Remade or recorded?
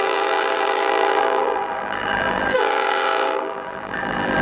remade